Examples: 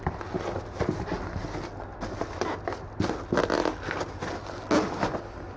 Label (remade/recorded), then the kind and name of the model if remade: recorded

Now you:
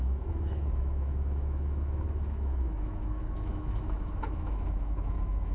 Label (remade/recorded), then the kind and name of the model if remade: remade, autoencoder, DAC-VAE